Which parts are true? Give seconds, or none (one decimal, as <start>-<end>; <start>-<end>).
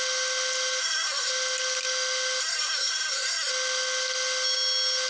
0.0-0.8; 1.3-2.4; 3.5-5.1